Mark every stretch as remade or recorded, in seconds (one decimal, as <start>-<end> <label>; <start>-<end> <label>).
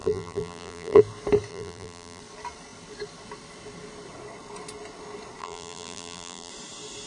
0.0-1.0 remade; 1.0-1.5 recorded; 1.5-2.2 remade; 2.2-5.4 recorded; 5.4-6.5 remade; 6.5-7.1 recorded